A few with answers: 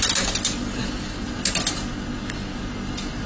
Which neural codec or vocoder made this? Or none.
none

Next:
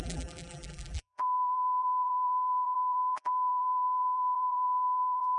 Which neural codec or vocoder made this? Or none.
vocoder, BigVGAN v2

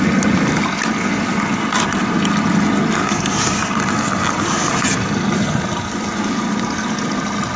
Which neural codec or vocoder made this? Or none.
none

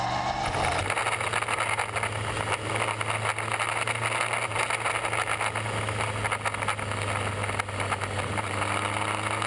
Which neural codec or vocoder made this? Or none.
none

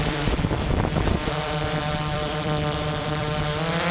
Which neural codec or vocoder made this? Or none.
vocoder, BigVGAN v2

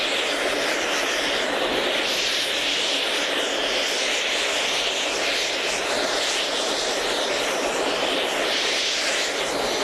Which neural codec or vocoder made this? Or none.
vocoder, BigVGAN v2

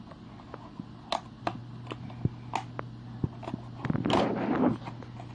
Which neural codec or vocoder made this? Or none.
none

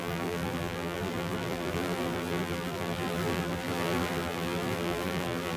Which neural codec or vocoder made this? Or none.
vocoder, BigVGAN v2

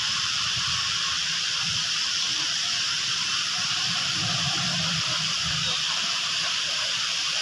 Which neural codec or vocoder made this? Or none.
vocoder, BigVGAN v2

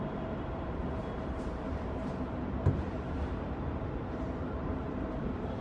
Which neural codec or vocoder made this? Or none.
vocoder, BigVGAN v2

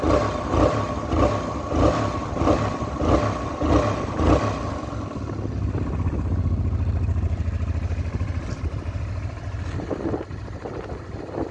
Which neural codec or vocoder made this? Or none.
none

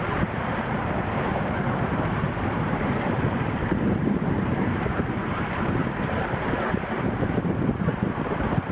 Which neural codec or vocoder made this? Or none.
vocoder, BigVGAN v2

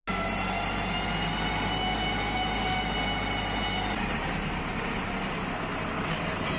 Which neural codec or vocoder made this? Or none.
none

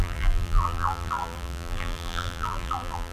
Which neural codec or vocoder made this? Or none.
vocoder, BigVGAN v2